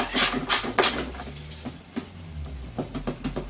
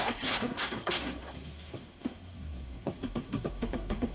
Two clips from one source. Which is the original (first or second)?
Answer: first